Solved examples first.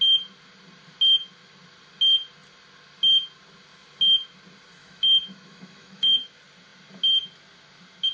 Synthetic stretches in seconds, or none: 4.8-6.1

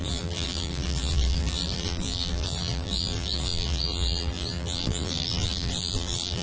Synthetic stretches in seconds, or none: 0.0-6.4

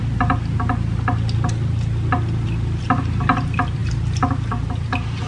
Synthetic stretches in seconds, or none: none

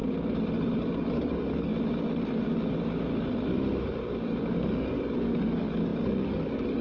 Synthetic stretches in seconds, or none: 0.8-1.7; 4.4-6.8

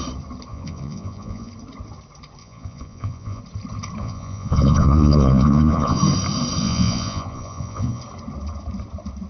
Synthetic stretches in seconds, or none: 0.5-1.5; 2.4-3.4; 4.0-6.0; 6.6-8.0

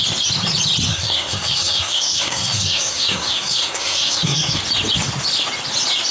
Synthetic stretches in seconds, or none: 0.9-4.6

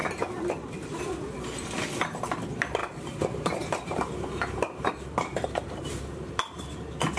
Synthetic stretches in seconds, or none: 2.8-7.2

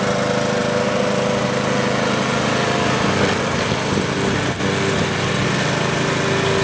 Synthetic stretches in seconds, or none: none